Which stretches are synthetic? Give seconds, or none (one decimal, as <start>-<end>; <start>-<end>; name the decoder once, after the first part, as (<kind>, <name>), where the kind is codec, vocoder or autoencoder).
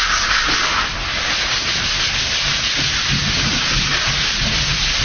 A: none